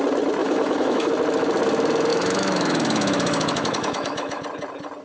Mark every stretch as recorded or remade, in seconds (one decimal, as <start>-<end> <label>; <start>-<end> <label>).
0.0-0.4 recorded; 0.4-1.1 remade; 1.1-2.1 recorded; 2.1-4.4 remade; 4.4-5.0 recorded